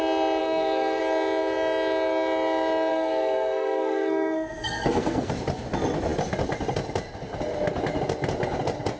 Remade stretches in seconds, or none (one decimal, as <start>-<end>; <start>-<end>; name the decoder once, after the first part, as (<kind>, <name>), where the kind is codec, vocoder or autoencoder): 0.4-1.0 (codec, SNAC); 2.9-5.3